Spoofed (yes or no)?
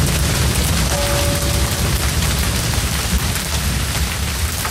no